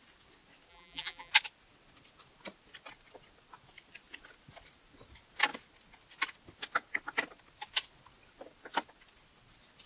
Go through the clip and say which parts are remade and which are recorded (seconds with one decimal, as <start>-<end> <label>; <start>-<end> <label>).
0.0-0.7 recorded; 0.7-1.3 remade; 1.3-9.9 recorded